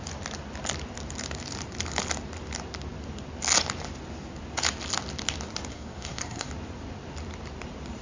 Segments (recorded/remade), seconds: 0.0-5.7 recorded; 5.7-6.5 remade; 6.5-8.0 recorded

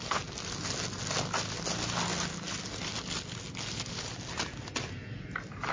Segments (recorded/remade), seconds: 0.0-5.7 recorded

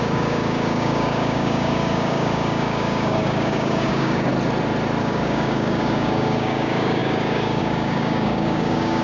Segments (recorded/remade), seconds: 0.0-4.3 remade; 4.3-5.0 recorded; 5.0-9.0 remade

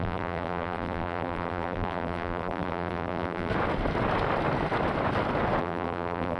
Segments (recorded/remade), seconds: 0.0-3.5 remade; 3.5-5.6 recorded; 5.6-6.4 remade